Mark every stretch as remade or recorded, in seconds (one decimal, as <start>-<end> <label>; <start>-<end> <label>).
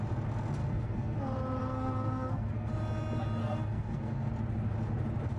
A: 0.0-0.6 recorded; 0.6-1.2 remade; 1.2-1.6 recorded; 1.6-2.7 remade; 2.7-3.4 recorded; 3.4-4.3 remade; 4.3-5.4 recorded